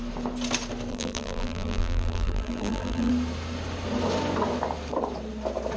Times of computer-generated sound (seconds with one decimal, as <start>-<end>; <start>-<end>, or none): 0.9-3.1